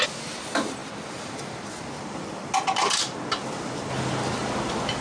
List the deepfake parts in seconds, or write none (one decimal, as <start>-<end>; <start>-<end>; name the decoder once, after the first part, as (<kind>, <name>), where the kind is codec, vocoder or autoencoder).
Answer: none